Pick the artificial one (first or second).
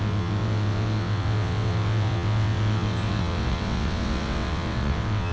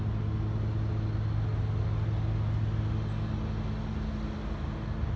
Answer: first